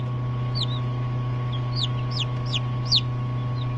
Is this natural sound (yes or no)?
yes